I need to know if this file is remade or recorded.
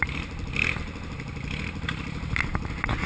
recorded